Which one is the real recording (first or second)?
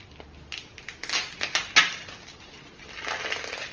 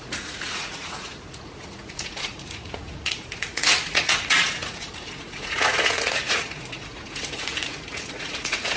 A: first